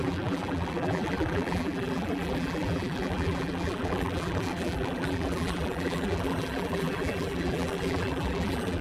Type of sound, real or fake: fake